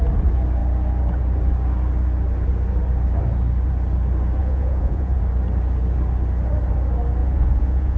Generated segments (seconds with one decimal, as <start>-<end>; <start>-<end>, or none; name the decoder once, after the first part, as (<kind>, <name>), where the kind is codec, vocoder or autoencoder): 4.4-5.2 (vocoder, Vocos); 7.2-8.0